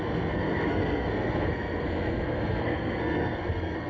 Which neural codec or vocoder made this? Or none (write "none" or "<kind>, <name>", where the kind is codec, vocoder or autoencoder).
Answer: codec, SNAC